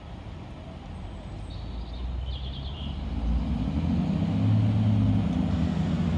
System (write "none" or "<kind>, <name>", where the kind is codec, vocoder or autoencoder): none